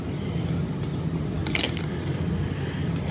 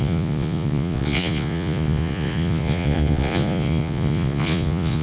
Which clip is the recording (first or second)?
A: first